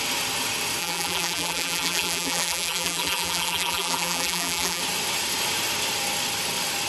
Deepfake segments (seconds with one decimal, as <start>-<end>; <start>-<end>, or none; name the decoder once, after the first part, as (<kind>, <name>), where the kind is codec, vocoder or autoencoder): 0.8-4.8 (vocoder, BigVGAN v2)